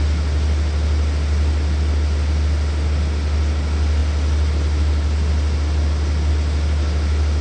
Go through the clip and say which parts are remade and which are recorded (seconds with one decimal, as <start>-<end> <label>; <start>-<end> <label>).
0.0-7.4 recorded